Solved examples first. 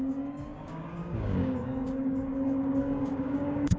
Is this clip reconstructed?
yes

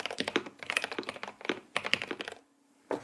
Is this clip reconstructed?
no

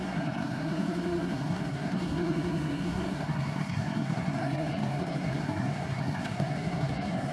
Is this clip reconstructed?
yes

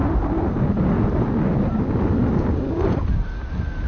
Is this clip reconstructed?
no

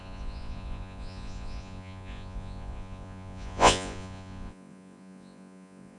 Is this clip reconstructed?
yes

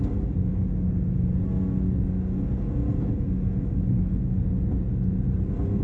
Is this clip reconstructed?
no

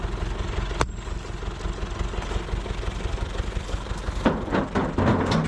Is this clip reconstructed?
no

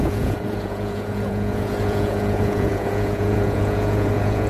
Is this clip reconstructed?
yes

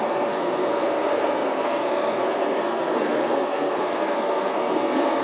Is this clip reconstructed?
yes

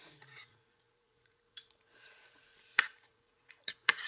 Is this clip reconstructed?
yes